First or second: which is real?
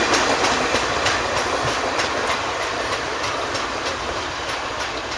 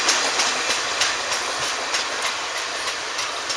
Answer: second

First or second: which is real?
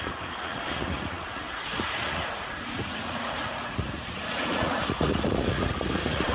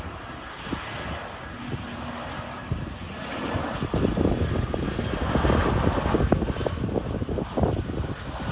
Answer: second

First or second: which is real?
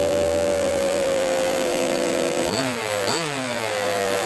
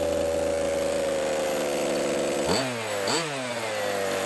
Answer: second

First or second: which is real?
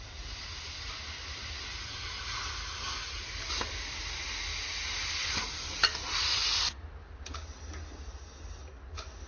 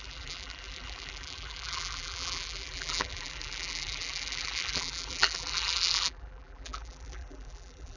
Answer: first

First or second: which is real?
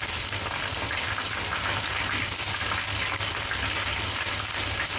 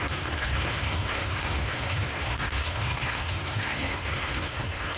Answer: first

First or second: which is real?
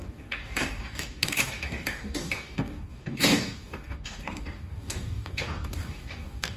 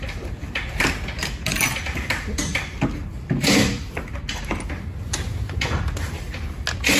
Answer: second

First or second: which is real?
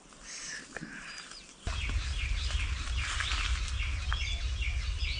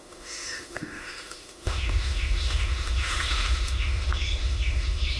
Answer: first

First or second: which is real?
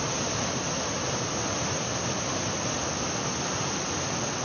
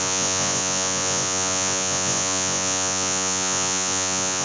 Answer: first